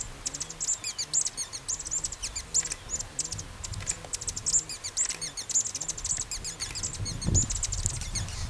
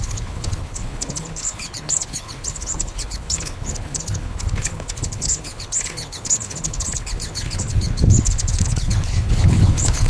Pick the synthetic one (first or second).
second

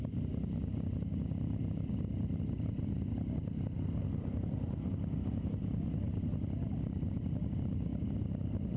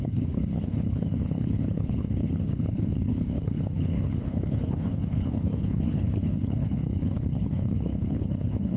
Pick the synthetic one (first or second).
second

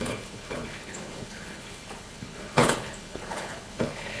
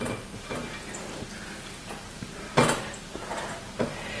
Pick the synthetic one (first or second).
first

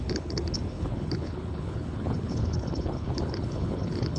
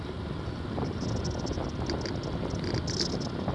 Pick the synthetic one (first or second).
first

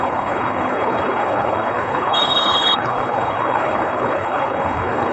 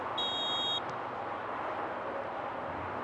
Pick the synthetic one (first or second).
first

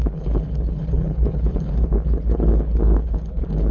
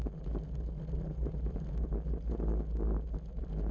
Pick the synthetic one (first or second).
first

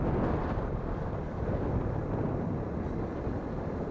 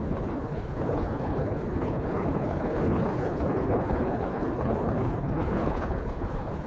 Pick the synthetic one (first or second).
second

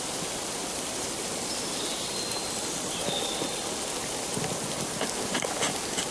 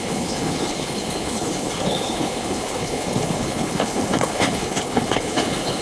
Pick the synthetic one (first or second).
second